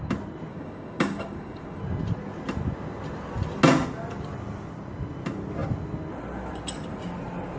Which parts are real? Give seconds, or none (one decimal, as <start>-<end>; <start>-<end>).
0.0-0.5; 1.8-7.6